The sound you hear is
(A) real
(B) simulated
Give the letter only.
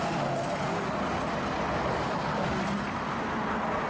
A